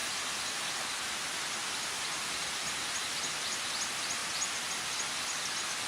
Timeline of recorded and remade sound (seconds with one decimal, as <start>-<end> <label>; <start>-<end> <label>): 0.0-5.9 recorded